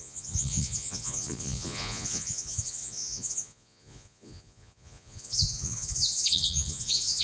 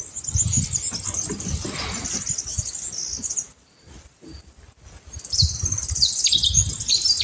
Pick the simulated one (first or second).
first